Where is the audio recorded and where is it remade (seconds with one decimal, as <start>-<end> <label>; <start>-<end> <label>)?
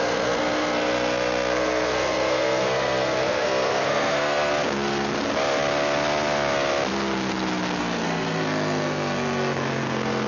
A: 0.0-4.5 remade; 4.5-7.8 recorded; 7.8-10.3 remade